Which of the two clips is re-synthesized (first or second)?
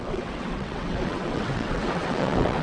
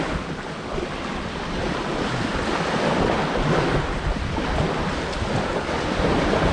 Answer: first